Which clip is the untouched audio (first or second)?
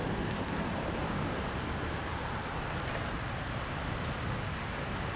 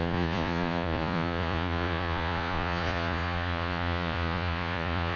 first